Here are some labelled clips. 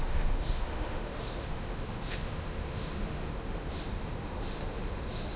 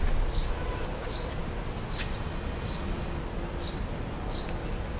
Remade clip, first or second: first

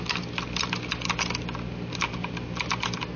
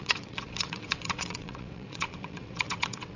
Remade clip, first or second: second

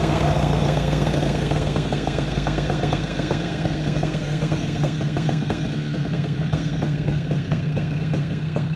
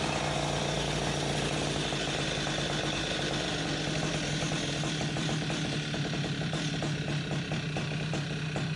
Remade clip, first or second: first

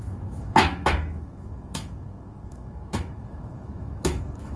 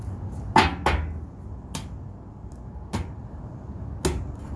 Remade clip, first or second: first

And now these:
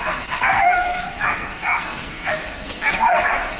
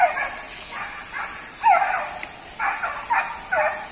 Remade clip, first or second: first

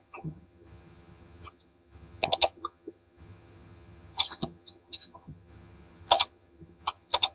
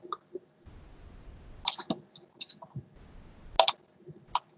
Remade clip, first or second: first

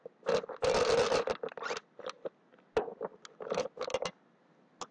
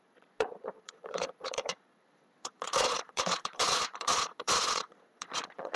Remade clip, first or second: second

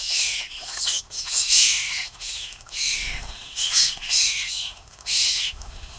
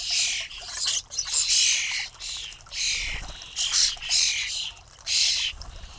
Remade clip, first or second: first